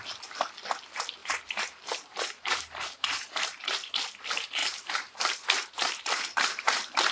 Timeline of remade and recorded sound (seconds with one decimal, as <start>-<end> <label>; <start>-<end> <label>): 0.0-1.2 recorded; 1.2-3.9 remade; 3.9-4.6 recorded; 4.6-7.1 remade

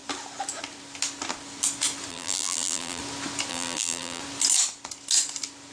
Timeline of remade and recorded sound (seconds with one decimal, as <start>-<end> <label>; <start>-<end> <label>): 0.0-2.1 recorded; 2.1-3.0 remade; 3.0-3.5 recorded; 3.5-4.2 remade; 4.2-5.7 recorded